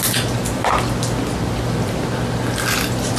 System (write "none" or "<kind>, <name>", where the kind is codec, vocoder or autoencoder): none